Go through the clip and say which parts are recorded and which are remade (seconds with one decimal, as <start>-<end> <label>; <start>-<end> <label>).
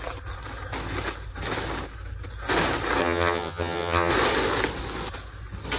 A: 0.0-3.0 recorded; 3.0-4.1 remade; 4.1-5.8 recorded